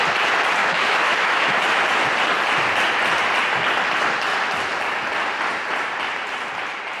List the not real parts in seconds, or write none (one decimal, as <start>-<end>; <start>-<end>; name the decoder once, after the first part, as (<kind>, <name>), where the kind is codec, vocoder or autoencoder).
0.6-1.8 (autoencoder, DAC-VAE)